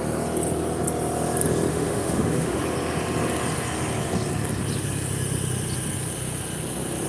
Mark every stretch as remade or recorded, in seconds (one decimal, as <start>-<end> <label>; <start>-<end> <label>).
0.0-1.7 recorded; 1.7-2.6 remade; 2.6-7.1 recorded